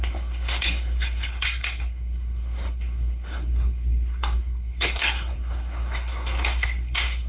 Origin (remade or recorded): remade